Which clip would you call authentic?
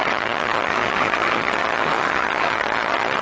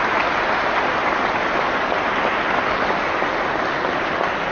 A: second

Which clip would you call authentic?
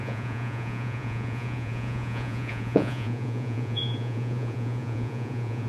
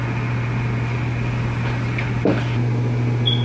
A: second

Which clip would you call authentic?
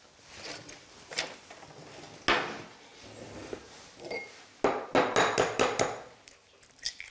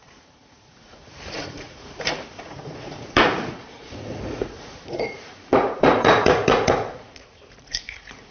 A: first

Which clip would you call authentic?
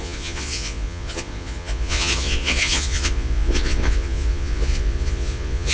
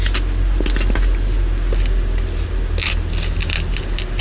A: second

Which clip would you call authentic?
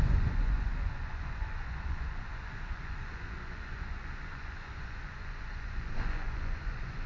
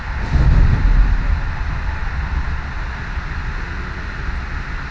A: second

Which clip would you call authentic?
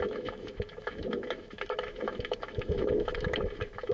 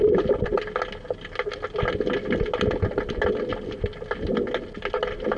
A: second